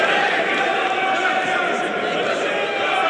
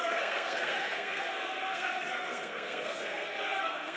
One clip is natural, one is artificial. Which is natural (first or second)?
first